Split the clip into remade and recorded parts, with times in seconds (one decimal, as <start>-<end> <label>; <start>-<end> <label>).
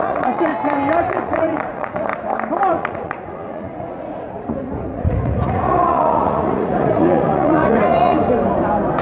0.0-0.5 remade; 0.5-1.1 recorded; 1.1-2.1 remade; 2.1-2.7 recorded; 2.7-8.2 remade; 8.2-9.0 recorded